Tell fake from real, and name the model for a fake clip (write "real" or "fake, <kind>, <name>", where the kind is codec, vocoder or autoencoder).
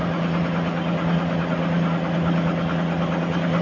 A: real